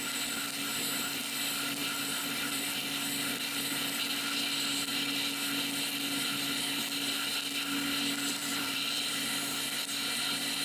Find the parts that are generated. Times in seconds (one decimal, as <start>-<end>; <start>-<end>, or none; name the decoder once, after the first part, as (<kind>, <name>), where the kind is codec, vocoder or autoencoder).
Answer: 1.8-2.6 (vocoder, BigVGAN v2); 8.4-9.1